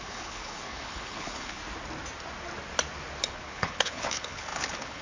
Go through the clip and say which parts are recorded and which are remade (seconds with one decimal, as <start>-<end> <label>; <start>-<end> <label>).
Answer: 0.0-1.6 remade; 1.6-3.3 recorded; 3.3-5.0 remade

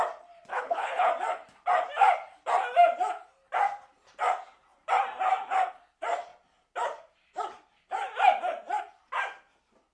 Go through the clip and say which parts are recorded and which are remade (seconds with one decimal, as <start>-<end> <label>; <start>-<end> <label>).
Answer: 0.0-0.5 recorded; 0.5-1.1 remade; 1.1-9.9 recorded

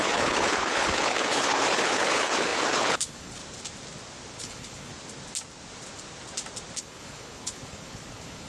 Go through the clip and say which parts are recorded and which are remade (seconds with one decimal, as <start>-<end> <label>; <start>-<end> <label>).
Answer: 0.0-3.4 remade; 3.4-4.4 recorded; 4.4-4.9 remade; 4.9-6.8 recorded; 6.8-8.5 remade

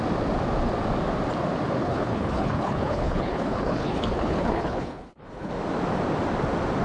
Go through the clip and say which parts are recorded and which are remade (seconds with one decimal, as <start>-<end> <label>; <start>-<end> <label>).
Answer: 0.0-1.8 recorded; 1.8-5.5 remade; 5.5-6.8 recorded